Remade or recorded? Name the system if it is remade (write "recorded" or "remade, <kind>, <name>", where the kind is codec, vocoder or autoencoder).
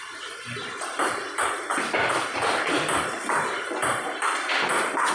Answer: recorded